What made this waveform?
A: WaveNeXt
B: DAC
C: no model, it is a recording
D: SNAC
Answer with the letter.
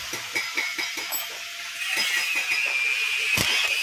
C